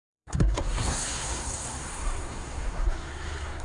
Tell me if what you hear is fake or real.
fake